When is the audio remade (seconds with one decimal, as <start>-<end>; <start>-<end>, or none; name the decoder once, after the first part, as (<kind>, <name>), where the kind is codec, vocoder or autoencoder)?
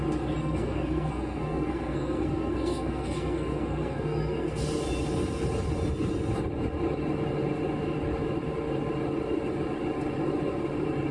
0.4-4.6 (codec, SNAC)